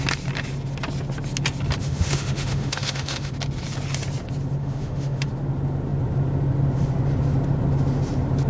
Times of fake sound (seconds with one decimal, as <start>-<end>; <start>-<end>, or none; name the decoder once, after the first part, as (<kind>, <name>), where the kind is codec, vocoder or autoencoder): 1.8-3.3 (autoencoder, DAC-VAE); 4.6-5.3